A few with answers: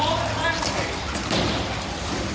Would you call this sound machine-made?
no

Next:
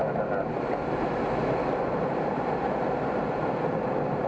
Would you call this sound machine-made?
no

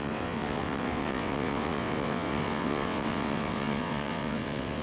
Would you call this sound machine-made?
yes